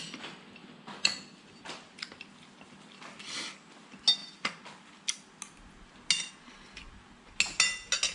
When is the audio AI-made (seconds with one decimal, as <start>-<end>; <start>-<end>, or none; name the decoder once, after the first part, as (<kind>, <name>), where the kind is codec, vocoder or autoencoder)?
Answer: none